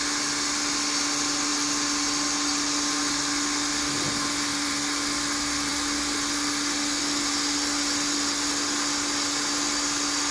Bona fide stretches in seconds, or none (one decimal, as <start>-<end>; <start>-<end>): 0.0-10.3